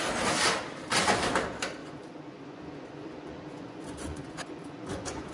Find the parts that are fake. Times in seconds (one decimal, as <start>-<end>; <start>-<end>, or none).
1.8-5.3